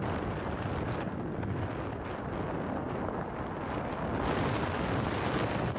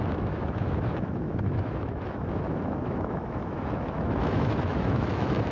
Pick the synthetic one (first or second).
second